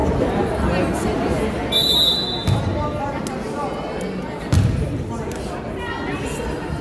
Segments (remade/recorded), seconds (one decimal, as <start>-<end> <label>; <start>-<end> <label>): 0.0-6.8 recorded